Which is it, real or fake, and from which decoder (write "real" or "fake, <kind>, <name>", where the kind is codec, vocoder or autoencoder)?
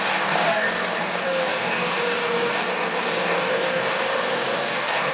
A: fake, codec, DAC